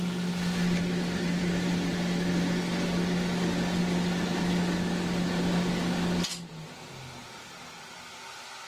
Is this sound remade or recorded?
recorded